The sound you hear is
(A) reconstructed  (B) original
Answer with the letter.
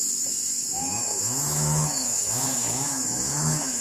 A